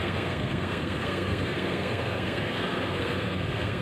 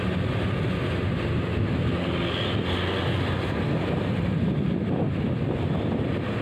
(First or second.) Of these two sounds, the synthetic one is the first